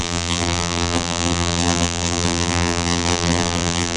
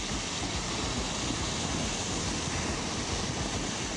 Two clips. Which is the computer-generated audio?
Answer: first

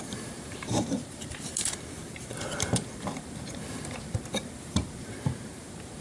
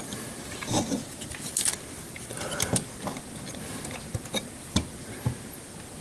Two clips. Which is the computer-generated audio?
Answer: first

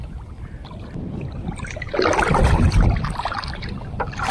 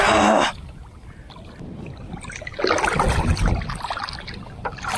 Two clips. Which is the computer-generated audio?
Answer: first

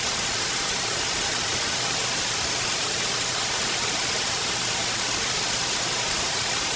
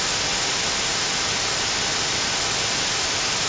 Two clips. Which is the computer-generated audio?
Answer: first